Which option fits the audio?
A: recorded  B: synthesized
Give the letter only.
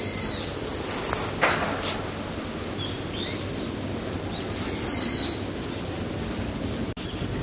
A